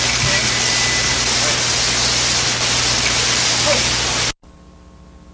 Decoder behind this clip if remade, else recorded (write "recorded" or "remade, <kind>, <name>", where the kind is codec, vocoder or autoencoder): recorded